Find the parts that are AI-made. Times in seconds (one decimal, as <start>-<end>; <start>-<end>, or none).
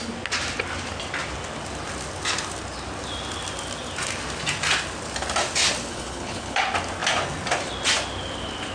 5.9-6.6